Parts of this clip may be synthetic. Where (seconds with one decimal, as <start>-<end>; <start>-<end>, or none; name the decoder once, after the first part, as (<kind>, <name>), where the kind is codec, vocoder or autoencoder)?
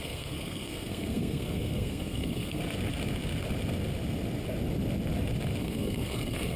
0.0-2.6 (codec, SNAC); 5.6-6.6